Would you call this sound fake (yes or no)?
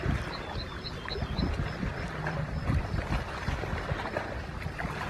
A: yes